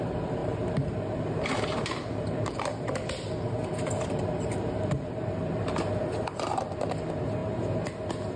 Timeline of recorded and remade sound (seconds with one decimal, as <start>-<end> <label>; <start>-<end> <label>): 0.0-0.4 recorded; 0.4-5.4 remade; 5.4-8.4 recorded

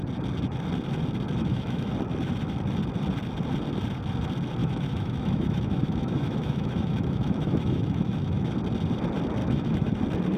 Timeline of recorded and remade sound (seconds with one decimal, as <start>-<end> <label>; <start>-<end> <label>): 0.0-1.4 recorded; 1.4-1.9 remade; 1.9-4.6 recorded; 4.6-8.5 remade; 8.5-9.4 recorded; 9.4-9.9 remade; 9.9-10.4 recorded

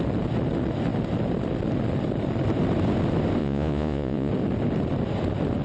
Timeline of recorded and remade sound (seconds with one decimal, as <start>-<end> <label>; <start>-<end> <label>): 0.0-3.4 recorded; 3.4-4.3 remade; 4.3-5.6 recorded

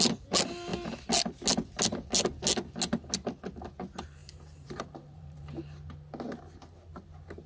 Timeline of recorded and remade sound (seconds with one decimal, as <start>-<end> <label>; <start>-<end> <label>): 0.0-4.2 recorded; 4.2-5.5 remade; 5.5-7.5 recorded

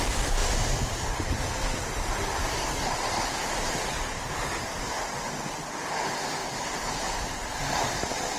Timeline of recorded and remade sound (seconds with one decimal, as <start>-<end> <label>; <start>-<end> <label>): 0.0-0.4 recorded; 0.4-1.4 remade; 1.4-2.4 recorded; 2.4-3.8 remade; 3.8-6.4 recorded; 6.4-7.1 remade; 7.1-8.4 recorded

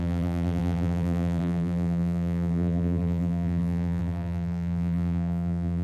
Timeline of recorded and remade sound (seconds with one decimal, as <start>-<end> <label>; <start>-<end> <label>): 0.0-5.8 remade

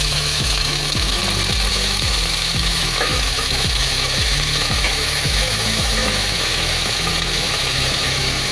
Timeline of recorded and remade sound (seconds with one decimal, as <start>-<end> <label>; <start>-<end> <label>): 0.0-1.2 remade; 1.2-1.7 recorded; 1.7-8.5 remade